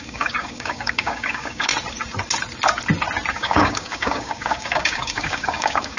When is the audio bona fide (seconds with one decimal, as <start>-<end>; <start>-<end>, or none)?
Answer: 1.7-3.3